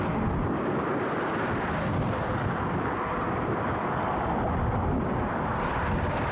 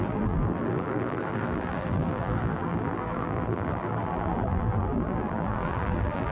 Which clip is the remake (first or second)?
second